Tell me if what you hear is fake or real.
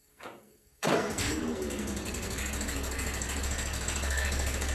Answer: fake